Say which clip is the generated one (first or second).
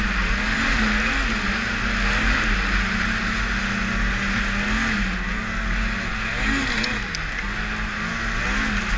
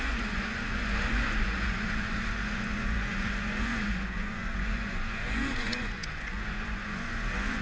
second